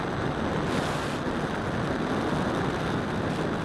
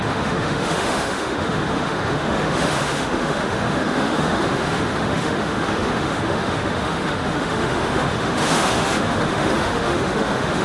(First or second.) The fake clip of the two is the second